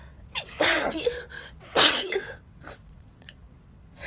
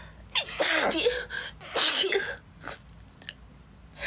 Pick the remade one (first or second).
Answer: first